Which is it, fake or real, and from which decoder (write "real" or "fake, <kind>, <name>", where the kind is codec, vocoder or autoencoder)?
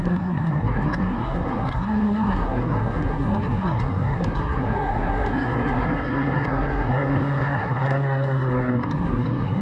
fake, codec, SNAC